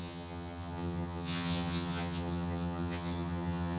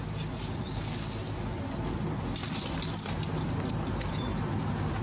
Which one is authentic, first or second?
second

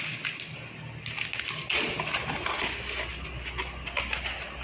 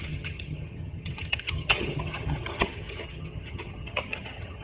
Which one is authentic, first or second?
first